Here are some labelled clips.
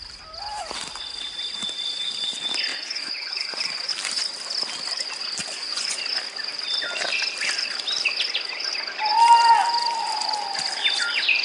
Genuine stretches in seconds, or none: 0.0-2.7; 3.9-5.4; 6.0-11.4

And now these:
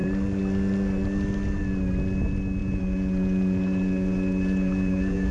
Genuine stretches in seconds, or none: 0.0-2.6

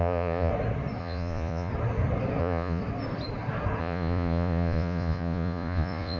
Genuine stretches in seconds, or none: 0.5-1.0; 1.7-2.4; 2.8-3.8